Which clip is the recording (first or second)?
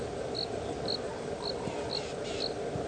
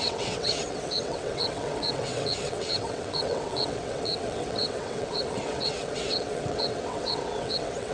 first